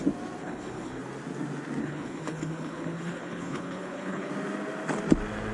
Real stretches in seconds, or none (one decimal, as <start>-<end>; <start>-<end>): 0.0-0.4; 1.0-1.8; 4.3-5.5